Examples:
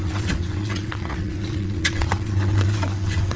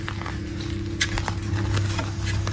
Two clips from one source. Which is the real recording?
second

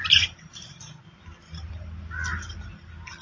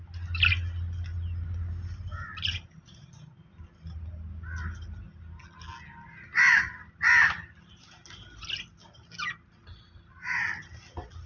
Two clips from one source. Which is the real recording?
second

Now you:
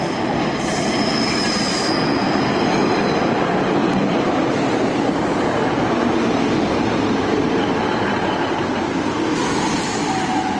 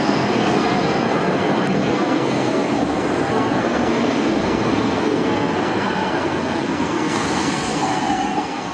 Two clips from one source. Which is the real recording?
first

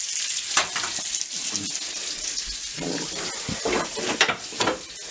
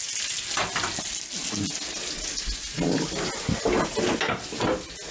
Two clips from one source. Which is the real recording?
second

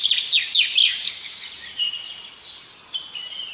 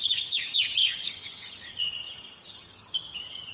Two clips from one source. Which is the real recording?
first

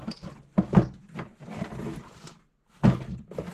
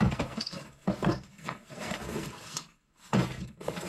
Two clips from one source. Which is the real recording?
first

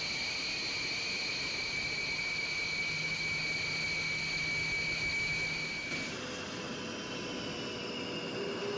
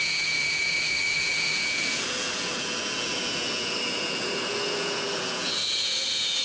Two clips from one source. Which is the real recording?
first